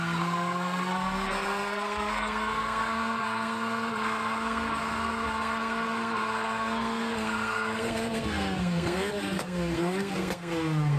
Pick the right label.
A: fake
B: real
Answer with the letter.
A